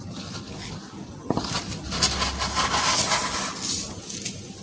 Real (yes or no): yes